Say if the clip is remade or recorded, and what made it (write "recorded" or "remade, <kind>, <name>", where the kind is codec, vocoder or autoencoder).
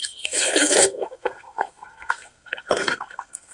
remade, codec, SNAC